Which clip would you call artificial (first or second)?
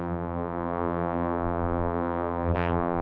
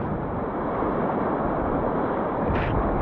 first